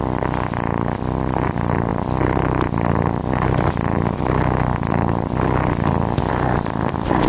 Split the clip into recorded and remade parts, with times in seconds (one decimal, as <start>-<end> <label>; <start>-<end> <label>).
0.0-7.3 recorded